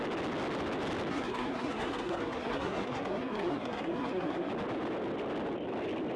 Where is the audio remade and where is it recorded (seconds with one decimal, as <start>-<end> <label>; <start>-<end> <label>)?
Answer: 0.0-1.1 recorded; 1.1-4.5 remade; 4.5-6.2 recorded